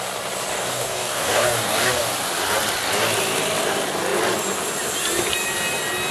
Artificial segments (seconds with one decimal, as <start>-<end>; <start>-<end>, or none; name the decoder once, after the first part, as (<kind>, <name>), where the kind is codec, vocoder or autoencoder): 0.5-2.1 (codec, DAC)